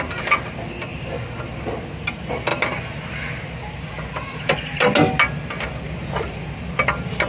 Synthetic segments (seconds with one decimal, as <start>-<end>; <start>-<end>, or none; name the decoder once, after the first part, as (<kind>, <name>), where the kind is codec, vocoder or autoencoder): none